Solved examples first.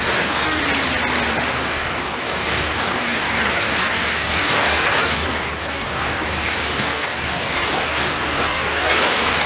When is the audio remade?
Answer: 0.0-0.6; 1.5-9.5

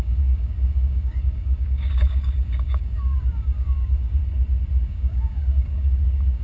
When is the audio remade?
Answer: 0.0-4.2; 4.9-6.4

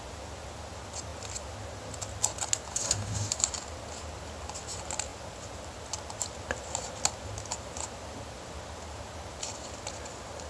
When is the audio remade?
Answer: 2.7-3.3

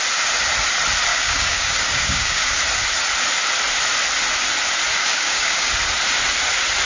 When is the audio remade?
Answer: 1.1-2.6; 5.0-5.7

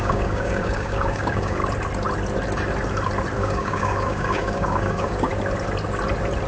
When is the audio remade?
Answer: 0.0-1.6; 3.4-5.3

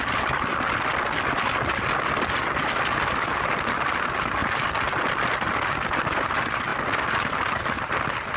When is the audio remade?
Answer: none